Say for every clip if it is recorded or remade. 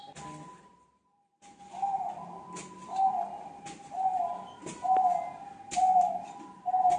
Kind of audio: recorded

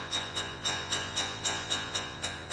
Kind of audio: remade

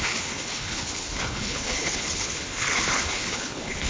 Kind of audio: remade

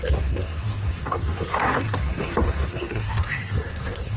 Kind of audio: remade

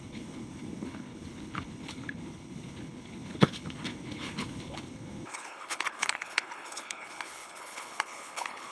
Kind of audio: remade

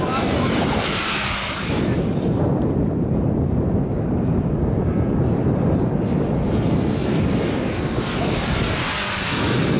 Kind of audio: recorded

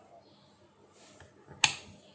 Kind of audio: recorded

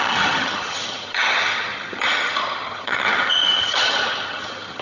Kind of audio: remade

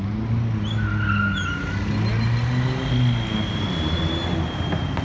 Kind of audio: recorded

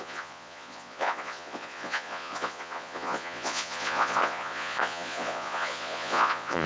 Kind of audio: remade